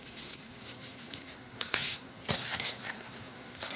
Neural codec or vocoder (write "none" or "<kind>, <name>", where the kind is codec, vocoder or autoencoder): codec, SNAC